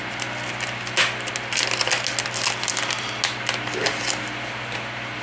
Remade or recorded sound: recorded